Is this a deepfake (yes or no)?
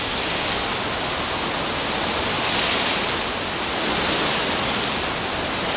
no